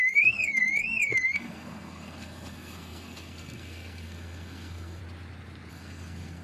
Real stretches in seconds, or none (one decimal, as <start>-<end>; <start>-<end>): 5.0-5.7